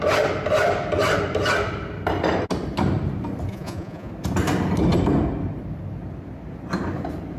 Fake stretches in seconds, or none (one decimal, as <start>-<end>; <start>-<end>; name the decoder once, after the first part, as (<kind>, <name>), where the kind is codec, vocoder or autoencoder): 3.5-4.1 (vocoder, Vocos)